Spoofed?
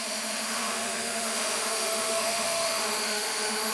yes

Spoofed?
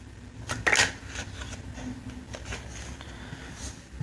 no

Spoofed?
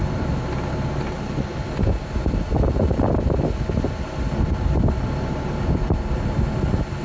no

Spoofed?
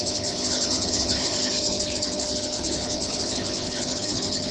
yes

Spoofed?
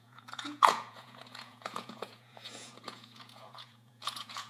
yes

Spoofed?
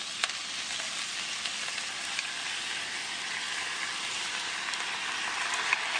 no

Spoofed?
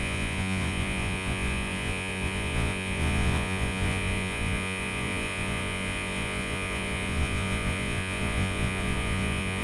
yes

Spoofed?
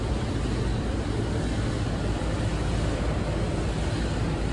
no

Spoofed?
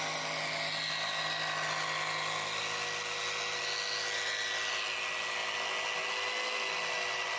no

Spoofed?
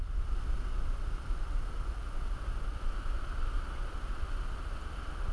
no